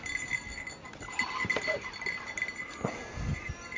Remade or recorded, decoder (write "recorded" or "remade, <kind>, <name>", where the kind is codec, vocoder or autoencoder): recorded